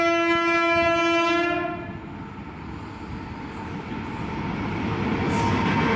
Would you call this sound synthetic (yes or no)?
no